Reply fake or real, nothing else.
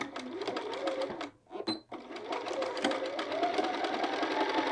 real